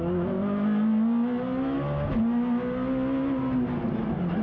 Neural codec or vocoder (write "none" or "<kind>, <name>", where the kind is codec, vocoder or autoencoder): none